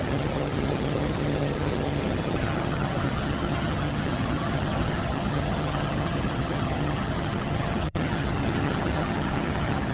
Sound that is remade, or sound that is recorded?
remade